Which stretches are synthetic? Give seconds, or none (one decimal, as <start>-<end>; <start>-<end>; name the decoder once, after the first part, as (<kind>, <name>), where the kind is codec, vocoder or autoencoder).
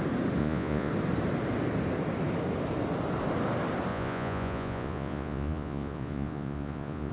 0.4-0.9 (vocoder, Vocos); 3.9-7.1